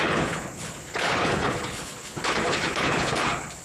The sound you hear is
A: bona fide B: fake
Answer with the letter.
B